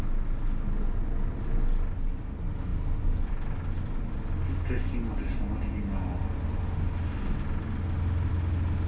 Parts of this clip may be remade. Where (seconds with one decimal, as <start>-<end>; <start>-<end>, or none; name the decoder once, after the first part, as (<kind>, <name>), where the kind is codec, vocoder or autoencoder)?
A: none